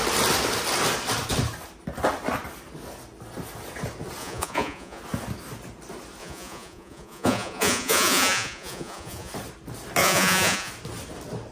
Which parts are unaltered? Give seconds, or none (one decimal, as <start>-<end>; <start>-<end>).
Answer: 0.0-4.2; 5.0-6.2; 9.3-10.0; 10.7-11.5